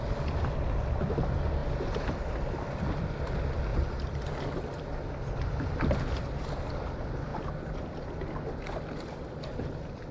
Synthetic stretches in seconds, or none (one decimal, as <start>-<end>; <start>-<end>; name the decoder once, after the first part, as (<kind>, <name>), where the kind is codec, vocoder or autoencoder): 3.7-6.6 (vocoder, BigVGAN v2); 7.3-10.1